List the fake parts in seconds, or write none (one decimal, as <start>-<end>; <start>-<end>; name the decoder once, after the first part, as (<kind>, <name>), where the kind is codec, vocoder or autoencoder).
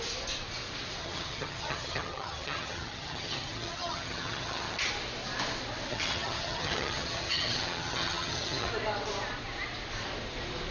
1.0-4.9 (vocoder, HiFi-GAN); 5.9-8.7